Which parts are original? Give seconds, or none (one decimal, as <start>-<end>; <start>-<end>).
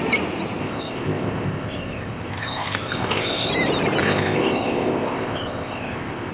0.0-0.6; 3.5-4.0